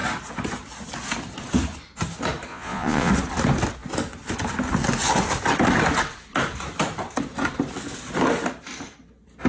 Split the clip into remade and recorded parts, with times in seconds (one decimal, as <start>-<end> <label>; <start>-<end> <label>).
0.0-2.5 recorded; 2.5-3.1 remade; 3.1-9.5 recorded